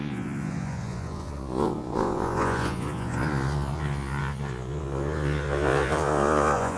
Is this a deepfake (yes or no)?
yes